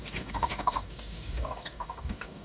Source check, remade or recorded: remade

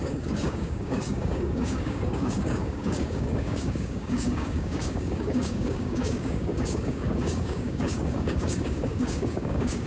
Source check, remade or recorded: remade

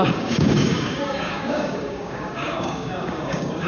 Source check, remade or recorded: remade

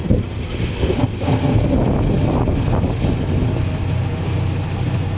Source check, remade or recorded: recorded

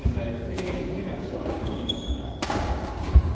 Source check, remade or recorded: remade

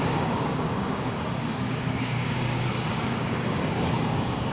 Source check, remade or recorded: remade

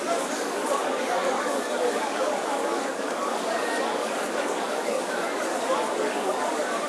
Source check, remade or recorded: remade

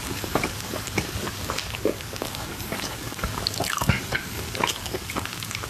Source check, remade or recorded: remade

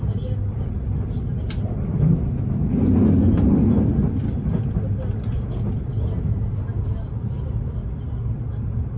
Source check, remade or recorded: recorded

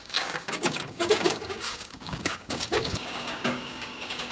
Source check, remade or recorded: remade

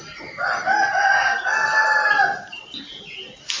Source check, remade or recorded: recorded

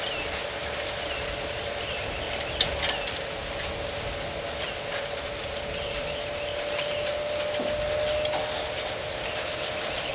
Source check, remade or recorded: recorded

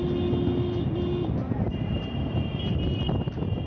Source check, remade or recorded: recorded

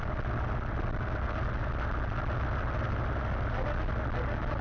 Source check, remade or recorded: recorded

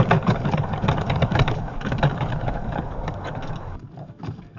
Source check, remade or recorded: remade